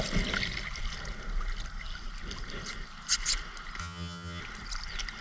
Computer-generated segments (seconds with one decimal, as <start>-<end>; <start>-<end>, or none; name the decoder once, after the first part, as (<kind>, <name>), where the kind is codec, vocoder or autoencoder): 3.8-4.4 (vocoder, HiFi-GAN)